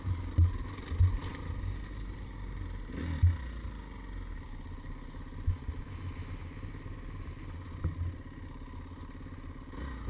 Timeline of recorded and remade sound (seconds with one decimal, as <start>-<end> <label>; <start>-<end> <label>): 0.0-10.1 recorded